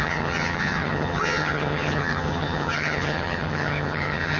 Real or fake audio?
fake